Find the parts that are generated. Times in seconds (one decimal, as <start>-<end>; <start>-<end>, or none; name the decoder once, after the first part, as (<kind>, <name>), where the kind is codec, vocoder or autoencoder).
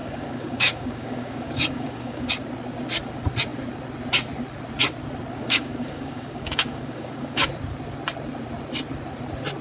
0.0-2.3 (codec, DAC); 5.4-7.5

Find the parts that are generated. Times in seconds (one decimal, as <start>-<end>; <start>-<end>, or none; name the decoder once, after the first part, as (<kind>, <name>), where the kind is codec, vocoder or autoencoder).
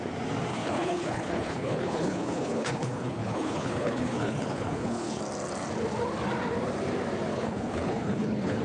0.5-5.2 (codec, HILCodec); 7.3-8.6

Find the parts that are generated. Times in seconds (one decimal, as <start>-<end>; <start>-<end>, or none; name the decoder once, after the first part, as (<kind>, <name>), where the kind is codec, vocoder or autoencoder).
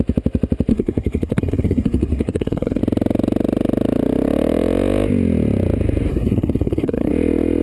0.7-2.8 (codec, SNAC); 6.1-7.1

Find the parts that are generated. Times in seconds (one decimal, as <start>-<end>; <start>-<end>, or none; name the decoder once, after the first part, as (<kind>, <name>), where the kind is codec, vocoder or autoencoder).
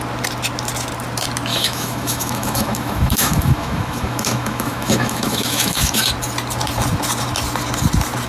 1.5-6.1 (autoencoder, DAC-VAE)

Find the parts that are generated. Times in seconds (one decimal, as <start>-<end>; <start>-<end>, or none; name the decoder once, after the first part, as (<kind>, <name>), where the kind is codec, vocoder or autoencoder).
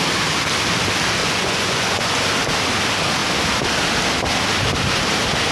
1.2-2.2 (vocoder, Vocos)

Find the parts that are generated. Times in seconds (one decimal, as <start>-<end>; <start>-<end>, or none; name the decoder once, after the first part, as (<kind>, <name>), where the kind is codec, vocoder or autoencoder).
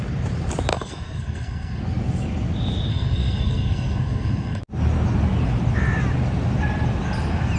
0.7-1.8 (codec, SNAC); 2.9-4.6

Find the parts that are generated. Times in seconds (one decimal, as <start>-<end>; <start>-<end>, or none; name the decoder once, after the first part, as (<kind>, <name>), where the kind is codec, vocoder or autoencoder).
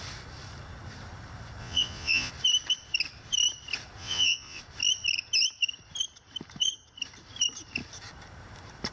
1.6-2.3 (vocoder, Vocos); 4.0-4.6